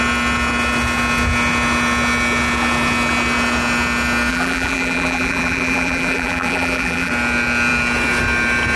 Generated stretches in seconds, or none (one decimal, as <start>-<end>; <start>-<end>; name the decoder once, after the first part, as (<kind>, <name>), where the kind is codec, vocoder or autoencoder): 4.3-7.1 (vocoder, BigVGAN v2)